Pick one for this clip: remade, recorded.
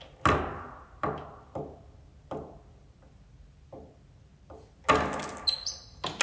recorded